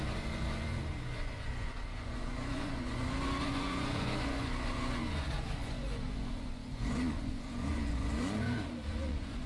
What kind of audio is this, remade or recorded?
remade